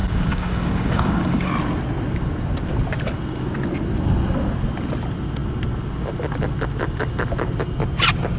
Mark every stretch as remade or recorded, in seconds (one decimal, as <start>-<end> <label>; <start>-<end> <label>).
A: 0.0-1.5 remade; 1.5-8.4 recorded